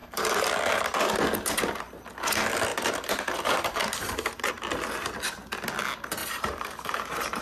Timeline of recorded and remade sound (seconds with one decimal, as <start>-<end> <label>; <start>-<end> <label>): 0.0-0.5 remade; 0.5-2.7 recorded; 2.7-4.5 remade; 4.5-6.2 recorded; 6.2-7.4 remade